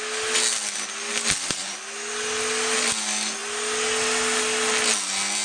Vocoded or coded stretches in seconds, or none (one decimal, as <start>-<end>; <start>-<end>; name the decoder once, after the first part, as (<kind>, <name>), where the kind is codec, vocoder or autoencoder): none